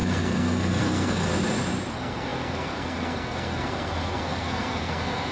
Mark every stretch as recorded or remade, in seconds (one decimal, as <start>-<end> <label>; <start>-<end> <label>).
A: 0.0-1.3 remade; 1.3-1.9 recorded; 1.9-5.3 remade